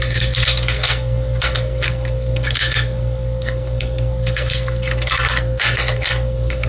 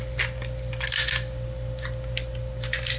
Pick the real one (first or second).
second